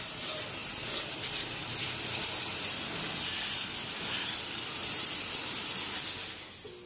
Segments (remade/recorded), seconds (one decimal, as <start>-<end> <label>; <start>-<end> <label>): 0.0-0.6 recorded; 0.6-1.2 remade; 1.2-1.6 recorded; 1.6-5.7 remade; 5.7-6.9 recorded